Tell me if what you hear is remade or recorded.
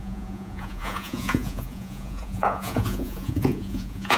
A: remade